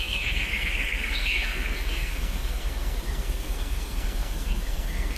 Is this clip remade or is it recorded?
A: remade